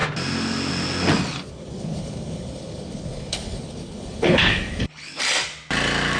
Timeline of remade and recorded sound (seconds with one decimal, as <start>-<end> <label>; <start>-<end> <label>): 0.0-1.5 recorded; 1.5-5.2 remade; 5.2-6.2 recorded